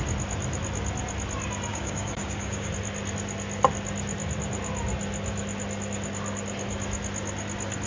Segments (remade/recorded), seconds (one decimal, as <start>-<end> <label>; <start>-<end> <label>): 0.0-1.7 recorded; 1.7-2.7 remade; 2.7-7.9 recorded